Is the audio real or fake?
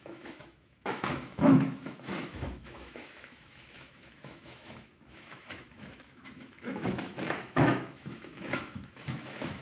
fake